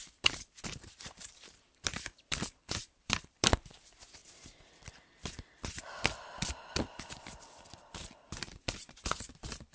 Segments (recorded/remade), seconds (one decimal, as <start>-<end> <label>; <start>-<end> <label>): 0.0-9.7 remade